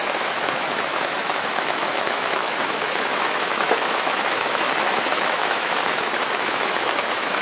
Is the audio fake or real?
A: fake